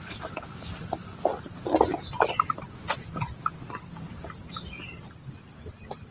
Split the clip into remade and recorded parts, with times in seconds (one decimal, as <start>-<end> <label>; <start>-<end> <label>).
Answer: 0.0-6.1 recorded